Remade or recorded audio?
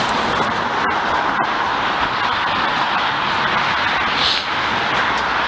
recorded